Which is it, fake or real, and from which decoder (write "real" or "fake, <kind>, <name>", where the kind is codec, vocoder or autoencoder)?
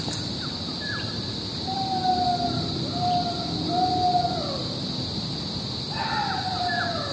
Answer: fake, vocoder, BigVGAN v2